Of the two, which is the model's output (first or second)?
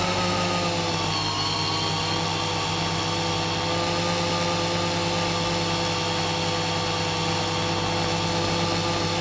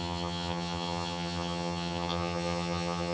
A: second